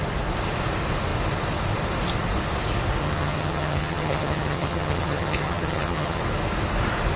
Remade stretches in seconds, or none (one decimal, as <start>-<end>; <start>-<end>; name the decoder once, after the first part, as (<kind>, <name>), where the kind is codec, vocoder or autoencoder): 3.0-6.2 (vocoder, HiFi-GAN)